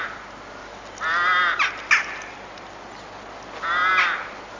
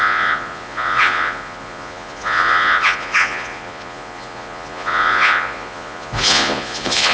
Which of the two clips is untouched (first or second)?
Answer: first